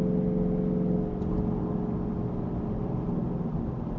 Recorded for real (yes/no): yes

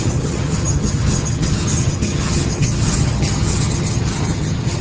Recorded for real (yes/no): no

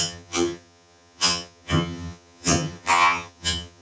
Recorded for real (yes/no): no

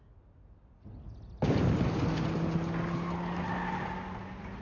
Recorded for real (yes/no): yes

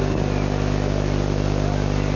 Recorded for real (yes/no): yes